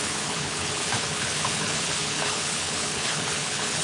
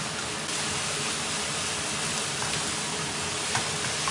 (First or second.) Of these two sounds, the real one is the second